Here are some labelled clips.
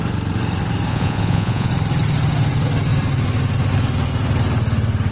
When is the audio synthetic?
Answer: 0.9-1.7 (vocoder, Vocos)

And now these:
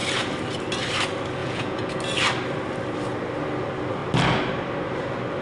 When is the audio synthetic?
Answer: 1.4-2.0 (vocoder, Vocos)

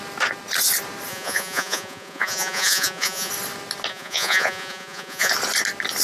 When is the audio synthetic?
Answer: 1.1-3.3 (vocoder, Vocos); 3.9-5.3

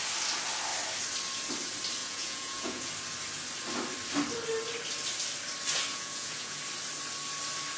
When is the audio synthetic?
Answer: 2.0-2.9 (vocoder, Vocos); 5.9-6.6